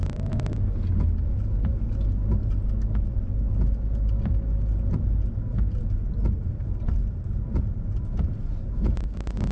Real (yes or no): yes